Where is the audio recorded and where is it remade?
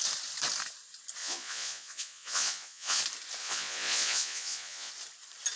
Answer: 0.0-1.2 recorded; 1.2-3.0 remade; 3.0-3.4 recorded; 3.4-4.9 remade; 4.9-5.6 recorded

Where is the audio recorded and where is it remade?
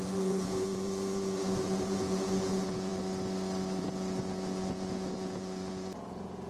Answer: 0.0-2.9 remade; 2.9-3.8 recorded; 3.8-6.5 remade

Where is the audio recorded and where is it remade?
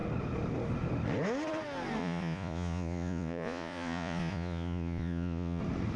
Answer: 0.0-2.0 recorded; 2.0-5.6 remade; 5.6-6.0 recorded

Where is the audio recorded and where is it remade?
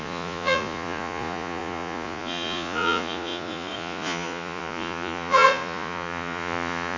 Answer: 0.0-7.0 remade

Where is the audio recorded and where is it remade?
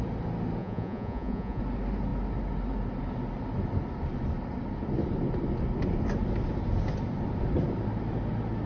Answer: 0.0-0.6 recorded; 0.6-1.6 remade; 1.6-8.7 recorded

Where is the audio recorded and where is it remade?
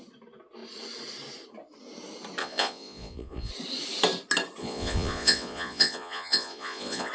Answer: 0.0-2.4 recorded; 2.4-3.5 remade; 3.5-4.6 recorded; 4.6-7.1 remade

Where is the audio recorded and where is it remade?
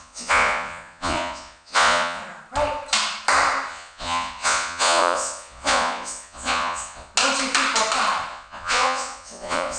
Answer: 0.0-2.2 remade; 2.2-3.7 recorded; 3.7-7.1 remade; 7.1-8.3 recorded; 8.3-9.8 remade